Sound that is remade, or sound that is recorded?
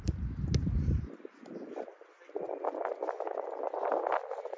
remade